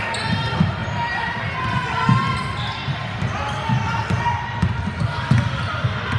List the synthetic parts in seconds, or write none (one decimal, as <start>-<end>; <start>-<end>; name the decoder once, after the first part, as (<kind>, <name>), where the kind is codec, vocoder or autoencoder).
0.8-1.6 (vocoder, BigVGAN v2)